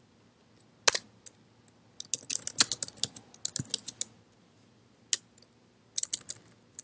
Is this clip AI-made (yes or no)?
no